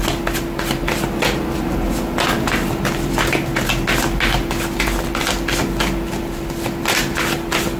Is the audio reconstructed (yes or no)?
no